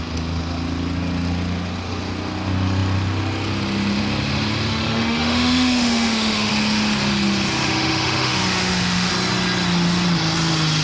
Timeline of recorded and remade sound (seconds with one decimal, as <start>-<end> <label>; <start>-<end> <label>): 0.0-4.7 recorded; 4.7-6.5 remade; 6.5-7.6 recorded; 7.6-9.1 remade; 9.1-10.8 recorded

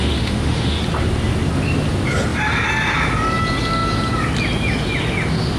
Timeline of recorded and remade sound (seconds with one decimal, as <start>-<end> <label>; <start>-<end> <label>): 0.0-0.8 remade; 0.8-5.6 recorded

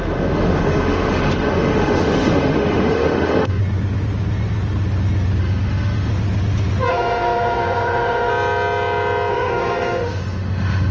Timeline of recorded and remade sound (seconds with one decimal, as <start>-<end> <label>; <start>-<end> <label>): 0.0-3.6 remade; 3.6-5.4 recorded; 5.4-6.1 remade; 6.1-6.9 recorded; 6.9-8.3 remade; 8.3-9.3 recorded; 9.3-10.9 remade

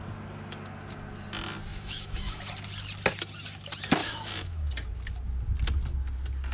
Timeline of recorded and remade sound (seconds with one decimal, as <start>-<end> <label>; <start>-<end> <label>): 0.0-1.7 recorded; 1.7-2.5 remade; 2.5-4.0 recorded; 4.0-4.7 remade; 4.7-6.5 recorded

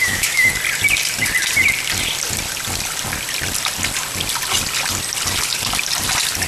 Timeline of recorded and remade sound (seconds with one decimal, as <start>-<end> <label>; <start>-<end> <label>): 0.0-0.5 remade; 0.5-6.5 recorded

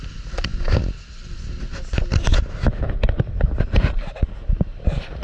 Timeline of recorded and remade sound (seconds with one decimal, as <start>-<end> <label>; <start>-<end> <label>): 0.0-5.2 recorded

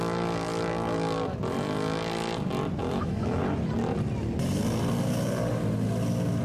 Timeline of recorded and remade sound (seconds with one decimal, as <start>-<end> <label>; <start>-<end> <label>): 0.0-2.8 recorded; 2.8-3.4 remade; 3.4-6.4 recorded